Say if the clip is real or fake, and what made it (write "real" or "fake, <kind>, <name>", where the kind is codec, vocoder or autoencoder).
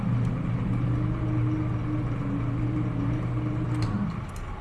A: real